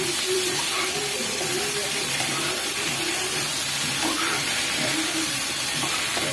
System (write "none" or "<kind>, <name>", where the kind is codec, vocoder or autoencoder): vocoder, BigVGAN v2